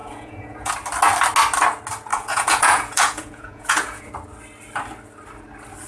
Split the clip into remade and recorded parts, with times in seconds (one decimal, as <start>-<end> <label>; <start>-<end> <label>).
0.0-0.7 remade; 0.7-2.1 recorded; 2.1-4.1 remade; 4.1-5.9 recorded